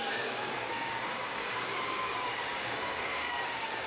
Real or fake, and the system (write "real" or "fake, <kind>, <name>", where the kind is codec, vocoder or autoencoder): fake, codec, DAC